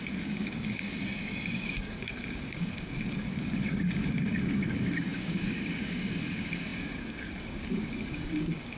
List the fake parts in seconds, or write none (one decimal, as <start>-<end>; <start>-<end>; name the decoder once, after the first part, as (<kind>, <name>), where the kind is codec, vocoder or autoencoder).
0.0-8.8 (codec, DAC)